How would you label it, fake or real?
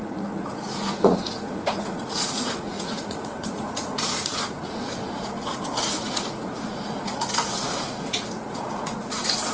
fake